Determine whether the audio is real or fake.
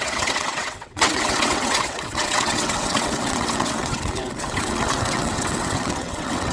fake